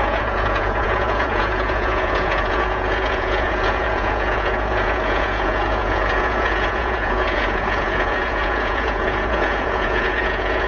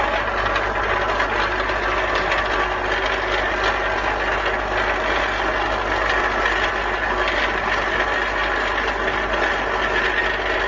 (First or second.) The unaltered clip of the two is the second